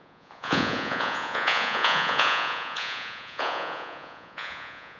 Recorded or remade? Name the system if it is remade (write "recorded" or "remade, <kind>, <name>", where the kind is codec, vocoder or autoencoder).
remade, vocoder, Vocos